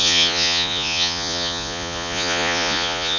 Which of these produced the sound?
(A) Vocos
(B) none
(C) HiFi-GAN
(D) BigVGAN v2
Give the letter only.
A